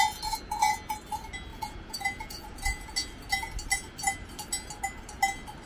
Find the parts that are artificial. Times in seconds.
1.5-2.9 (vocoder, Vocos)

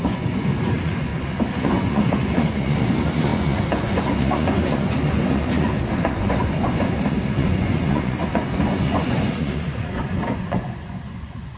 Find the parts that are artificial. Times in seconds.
0.0-11.6 (vocoder, Vocos)

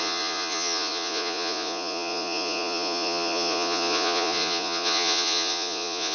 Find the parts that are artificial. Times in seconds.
0.0-6.1 (vocoder, Vocos)

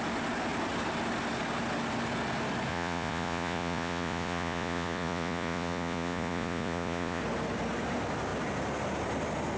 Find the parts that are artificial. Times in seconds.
2.7-7.2 (vocoder, Vocos)